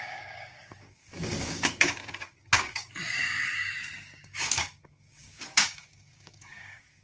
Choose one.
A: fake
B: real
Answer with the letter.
A